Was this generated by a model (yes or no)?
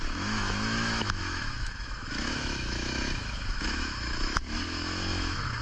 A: yes